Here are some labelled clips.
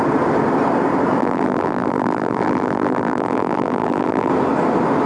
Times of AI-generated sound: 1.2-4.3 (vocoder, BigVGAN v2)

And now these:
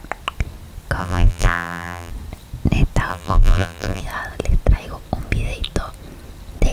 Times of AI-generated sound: 1.0-2.1 (vocoder, BigVGAN v2); 3.1-4.0

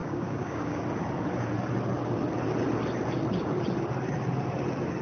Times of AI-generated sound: 0.0-0.8 (codec, DAC)

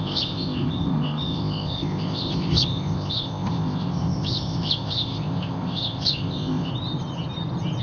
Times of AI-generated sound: 0.0-6.7 (codec, ZipCodec)

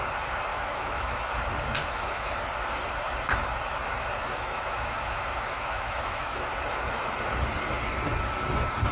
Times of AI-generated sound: 0.5-1.2 (autoencoder, DAC-VAE); 1.8-2.3; 4.2-6.5

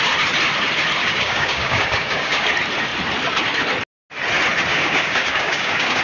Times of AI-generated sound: 1.0-2.5 (codec, DAC); 4.7-6.0

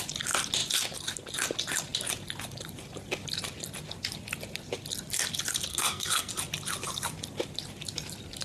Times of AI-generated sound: 5.7-6.3 (codec, SNAC)